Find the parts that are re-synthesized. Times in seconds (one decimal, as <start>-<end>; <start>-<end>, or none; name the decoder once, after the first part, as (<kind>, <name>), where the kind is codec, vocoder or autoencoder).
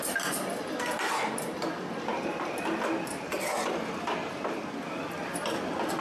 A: 0.0-2.1 (vocoder, BigVGAN v2); 3.3-6.0